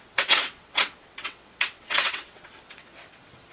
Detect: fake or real fake